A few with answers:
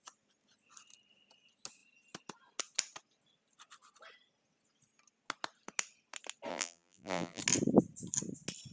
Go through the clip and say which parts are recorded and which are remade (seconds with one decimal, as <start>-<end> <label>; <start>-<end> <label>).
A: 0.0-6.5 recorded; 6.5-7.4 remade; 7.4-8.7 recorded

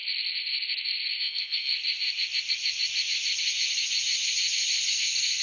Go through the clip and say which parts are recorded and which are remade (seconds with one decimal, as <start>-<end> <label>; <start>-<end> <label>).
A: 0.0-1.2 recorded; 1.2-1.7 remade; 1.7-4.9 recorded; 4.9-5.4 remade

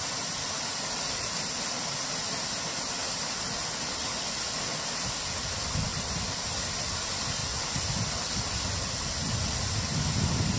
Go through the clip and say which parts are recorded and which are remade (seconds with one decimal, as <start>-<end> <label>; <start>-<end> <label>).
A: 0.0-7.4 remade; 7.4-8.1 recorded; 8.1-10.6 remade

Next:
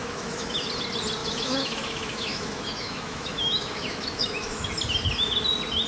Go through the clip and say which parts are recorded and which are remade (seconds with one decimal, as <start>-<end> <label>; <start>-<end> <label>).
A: 0.0-0.6 remade; 0.6-1.2 recorded; 1.2-4.7 remade; 4.7-5.9 recorded

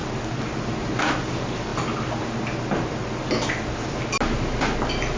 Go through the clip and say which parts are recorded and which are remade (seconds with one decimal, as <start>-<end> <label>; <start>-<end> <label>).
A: 0.0-5.2 recorded

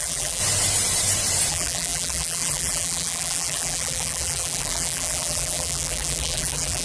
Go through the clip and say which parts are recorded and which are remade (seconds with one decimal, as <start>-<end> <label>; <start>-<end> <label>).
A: 0.0-0.4 remade; 0.4-1.5 recorded; 1.5-6.8 remade

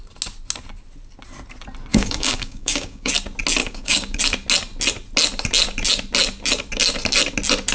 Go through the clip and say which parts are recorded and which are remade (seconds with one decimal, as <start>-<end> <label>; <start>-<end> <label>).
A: 0.0-1.9 recorded; 1.9-3.1 remade; 3.1-3.6 recorded; 3.6-4.2 remade; 4.2-7.7 recorded

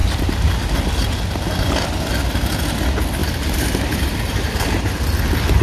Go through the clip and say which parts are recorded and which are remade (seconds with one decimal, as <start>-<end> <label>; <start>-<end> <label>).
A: 0.0-3.2 recorded; 3.2-4.9 remade; 4.9-5.6 recorded